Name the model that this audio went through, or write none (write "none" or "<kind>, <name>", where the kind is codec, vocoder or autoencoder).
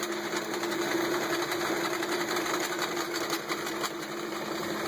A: vocoder, BigVGAN v2